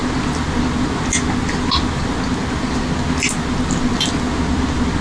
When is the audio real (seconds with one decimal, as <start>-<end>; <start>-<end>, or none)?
0.0-5.0